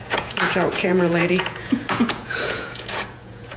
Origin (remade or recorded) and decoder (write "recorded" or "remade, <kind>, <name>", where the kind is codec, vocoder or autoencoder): remade, vocoder, Vocos